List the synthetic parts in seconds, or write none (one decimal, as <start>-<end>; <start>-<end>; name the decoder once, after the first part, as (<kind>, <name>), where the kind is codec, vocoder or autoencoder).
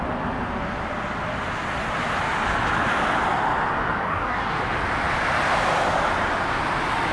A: 4.0-4.5 (codec, DAC)